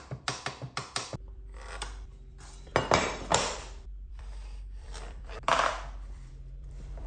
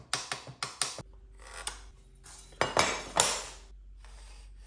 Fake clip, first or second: first